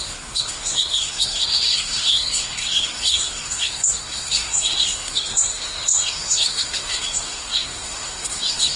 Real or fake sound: fake